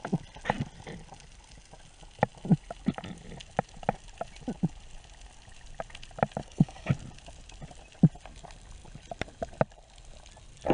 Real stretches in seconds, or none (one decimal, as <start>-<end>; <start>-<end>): 0.0-6.4; 6.9-10.7